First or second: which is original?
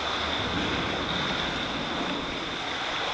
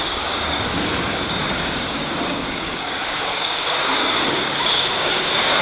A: first